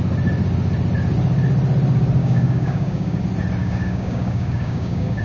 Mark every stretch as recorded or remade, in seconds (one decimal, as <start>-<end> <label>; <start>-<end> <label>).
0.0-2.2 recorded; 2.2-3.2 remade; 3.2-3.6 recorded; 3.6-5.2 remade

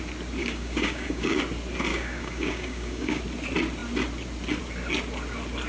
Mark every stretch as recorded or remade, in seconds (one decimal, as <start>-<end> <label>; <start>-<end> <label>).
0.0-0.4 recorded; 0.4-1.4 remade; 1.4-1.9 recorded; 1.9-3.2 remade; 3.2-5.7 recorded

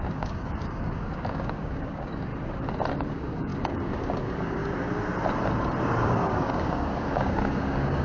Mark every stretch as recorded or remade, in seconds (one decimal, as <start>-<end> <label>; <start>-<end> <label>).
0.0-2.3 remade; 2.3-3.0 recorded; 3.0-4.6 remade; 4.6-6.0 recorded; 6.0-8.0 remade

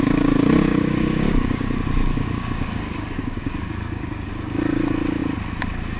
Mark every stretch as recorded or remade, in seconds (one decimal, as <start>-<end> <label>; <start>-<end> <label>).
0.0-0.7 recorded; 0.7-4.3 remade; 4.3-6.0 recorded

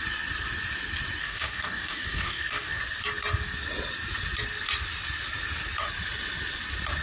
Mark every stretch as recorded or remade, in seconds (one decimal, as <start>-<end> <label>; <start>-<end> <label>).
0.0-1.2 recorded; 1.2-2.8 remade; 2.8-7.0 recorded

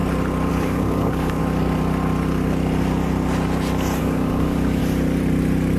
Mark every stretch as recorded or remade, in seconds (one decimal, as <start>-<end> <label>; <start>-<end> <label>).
0.0-0.5 recorded; 0.5-1.4 remade; 1.4-4.0 recorded; 4.0-4.8 remade; 4.8-5.8 recorded

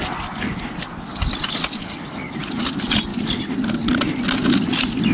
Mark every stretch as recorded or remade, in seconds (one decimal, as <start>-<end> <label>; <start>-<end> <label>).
0.0-1.8 recorded; 1.8-2.4 remade; 2.4-5.1 recorded